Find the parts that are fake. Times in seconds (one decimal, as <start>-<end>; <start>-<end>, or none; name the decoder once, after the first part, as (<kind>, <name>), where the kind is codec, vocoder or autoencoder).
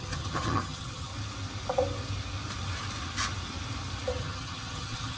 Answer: 0.0-1.1 (vocoder, HiFi-GAN); 4.2-5.2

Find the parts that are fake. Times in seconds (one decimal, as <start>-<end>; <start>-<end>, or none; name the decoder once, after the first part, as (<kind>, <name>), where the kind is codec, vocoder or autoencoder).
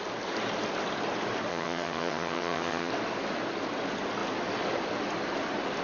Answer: 1.5-2.9 (vocoder, HiFi-GAN)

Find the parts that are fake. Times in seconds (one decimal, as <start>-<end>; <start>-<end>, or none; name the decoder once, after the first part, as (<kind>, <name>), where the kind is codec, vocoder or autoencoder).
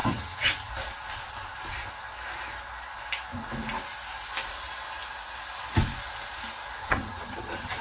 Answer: 0.0-0.7 (vocoder, HiFi-GAN); 6.8-7.8